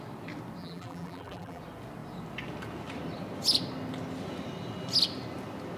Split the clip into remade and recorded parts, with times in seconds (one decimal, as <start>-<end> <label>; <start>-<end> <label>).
0.0-0.6 recorded; 0.6-1.6 remade; 1.6-5.8 recorded

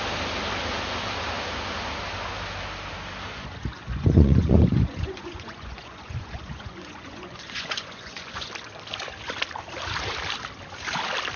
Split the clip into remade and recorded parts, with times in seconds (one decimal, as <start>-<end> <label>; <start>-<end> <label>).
0.0-3.3 recorded; 3.3-8.5 remade; 8.5-11.4 recorded

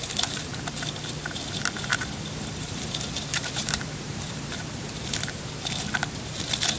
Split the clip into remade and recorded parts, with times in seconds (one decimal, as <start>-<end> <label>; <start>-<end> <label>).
0.0-1.9 recorded; 1.9-5.2 remade; 5.2-6.8 recorded

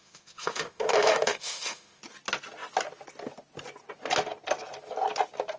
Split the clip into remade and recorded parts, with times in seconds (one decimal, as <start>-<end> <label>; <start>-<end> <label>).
0.0-2.0 remade; 2.0-5.6 recorded